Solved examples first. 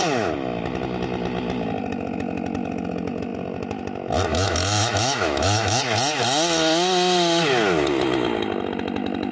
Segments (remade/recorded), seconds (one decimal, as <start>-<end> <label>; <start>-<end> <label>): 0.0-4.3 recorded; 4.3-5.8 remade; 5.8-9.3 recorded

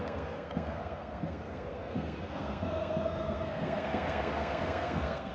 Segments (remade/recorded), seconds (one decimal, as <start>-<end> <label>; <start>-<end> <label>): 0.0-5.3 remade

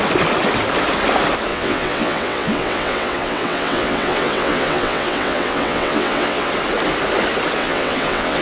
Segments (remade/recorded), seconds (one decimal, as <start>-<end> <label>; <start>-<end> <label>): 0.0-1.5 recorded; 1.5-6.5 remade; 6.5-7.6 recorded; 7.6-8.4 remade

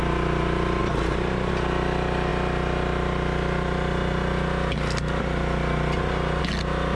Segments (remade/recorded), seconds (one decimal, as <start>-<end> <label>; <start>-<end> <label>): 0.0-0.8 recorded; 0.8-1.5 remade; 1.5-6.9 recorded

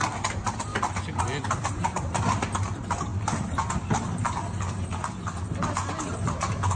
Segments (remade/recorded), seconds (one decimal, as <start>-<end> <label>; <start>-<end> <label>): 0.0-6.8 recorded